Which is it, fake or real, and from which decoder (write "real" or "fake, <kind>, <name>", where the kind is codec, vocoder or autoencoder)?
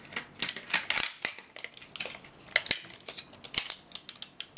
real